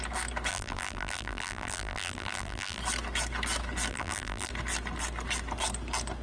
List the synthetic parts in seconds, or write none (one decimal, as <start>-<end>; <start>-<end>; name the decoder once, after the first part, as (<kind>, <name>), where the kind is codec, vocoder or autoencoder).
0.5-2.8 (vocoder, BigVGAN v2); 3.9-4.5